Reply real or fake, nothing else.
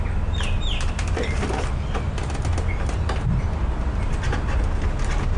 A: fake